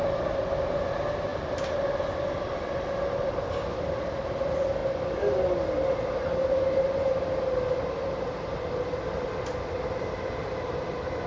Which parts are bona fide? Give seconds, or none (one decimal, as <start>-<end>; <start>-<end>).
0.0-11.3